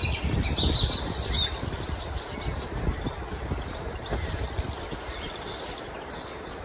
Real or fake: fake